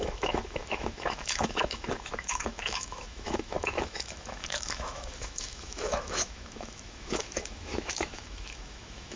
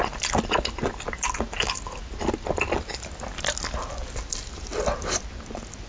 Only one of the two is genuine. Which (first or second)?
second